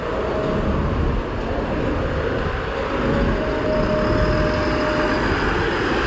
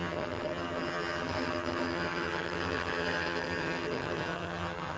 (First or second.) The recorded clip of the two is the first